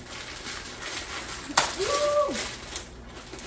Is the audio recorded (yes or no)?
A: yes